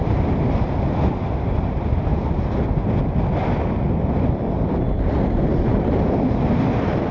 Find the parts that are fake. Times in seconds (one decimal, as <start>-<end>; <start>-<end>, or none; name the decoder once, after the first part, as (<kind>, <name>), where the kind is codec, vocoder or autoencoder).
none